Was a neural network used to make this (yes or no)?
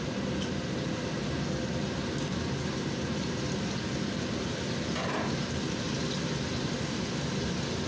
no